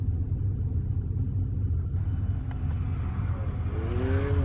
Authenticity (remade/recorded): recorded